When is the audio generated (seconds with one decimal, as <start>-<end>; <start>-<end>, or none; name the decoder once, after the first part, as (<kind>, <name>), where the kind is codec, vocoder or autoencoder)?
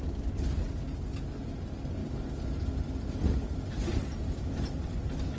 none